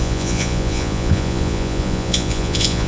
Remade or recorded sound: remade